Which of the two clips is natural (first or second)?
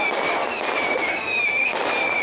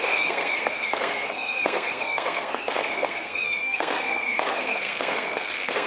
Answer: first